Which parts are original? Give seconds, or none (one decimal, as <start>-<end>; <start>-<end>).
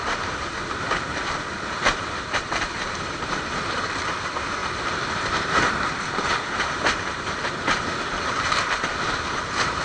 none